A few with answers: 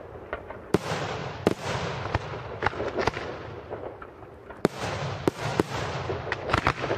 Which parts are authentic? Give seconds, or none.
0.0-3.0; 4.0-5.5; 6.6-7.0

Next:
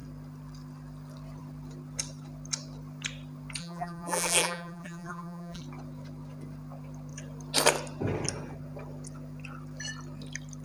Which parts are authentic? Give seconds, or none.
0.0-3.6; 5.6-10.6

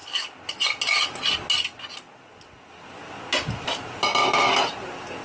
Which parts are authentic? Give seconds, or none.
0.0-5.2

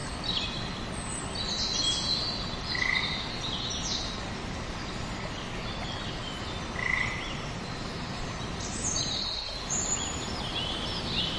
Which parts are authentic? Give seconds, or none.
0.0-7.8; 10.3-11.4

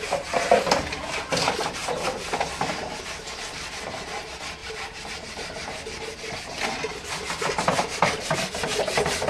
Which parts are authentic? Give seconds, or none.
0.0-4.6; 5.1-9.3